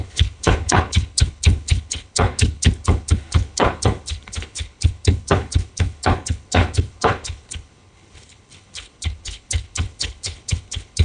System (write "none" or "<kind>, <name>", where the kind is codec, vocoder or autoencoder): codec, HILCodec